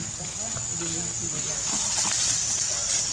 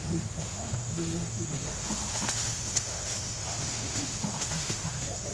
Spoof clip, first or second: second